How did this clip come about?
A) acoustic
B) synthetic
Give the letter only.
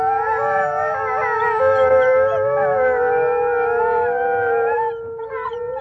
A